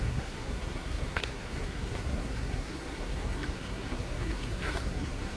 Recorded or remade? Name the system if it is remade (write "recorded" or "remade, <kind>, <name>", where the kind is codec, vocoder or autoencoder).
remade, codec, SNAC